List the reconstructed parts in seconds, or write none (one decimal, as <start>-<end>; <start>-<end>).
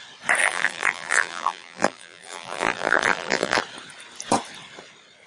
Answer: 0.4-3.6